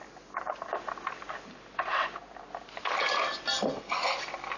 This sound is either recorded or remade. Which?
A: recorded